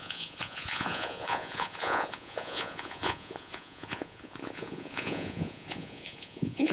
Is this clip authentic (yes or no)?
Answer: no